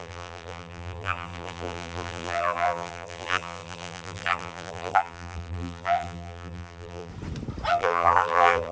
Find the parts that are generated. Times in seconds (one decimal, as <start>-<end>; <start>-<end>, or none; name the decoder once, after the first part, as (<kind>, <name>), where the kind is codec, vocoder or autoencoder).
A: 0.0-7.1 (vocoder, BigVGAN v2); 7.7-8.7